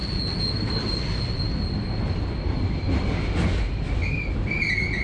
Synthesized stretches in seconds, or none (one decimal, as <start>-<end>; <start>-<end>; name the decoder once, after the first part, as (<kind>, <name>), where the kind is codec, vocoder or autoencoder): none